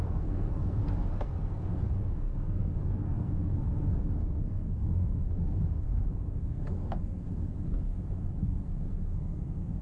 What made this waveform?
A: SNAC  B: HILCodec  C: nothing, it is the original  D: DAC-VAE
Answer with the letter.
A